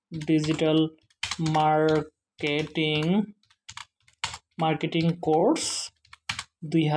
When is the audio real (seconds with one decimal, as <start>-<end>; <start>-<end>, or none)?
0.0-7.0